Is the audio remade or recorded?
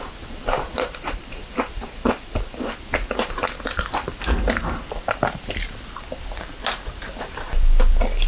recorded